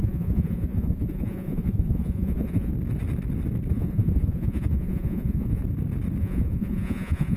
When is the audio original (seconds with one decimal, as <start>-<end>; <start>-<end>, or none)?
2.7-3.7; 5.6-6.2